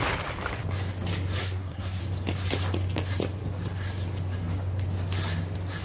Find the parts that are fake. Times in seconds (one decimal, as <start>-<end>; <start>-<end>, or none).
1.4-2.0

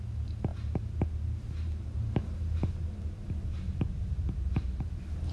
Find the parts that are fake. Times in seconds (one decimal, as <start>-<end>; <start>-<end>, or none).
none